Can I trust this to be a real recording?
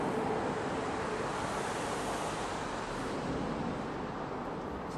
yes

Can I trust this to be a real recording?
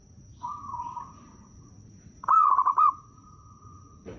no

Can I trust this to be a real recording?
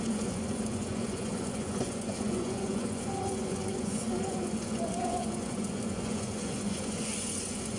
no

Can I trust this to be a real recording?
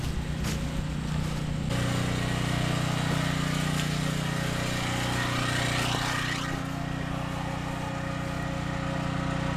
yes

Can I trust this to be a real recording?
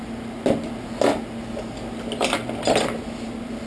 yes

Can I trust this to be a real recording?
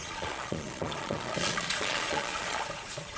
no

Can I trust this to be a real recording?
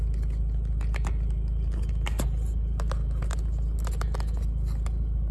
yes